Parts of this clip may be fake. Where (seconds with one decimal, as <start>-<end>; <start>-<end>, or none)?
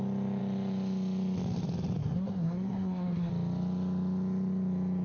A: 2.0-3.3